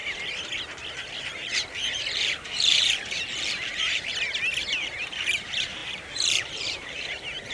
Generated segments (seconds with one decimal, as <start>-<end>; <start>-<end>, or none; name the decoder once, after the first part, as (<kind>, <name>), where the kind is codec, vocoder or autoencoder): 1.2-4.1 (vocoder, BigVGAN v2); 4.7-7.5